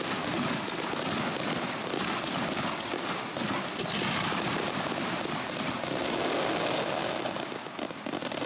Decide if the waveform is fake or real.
real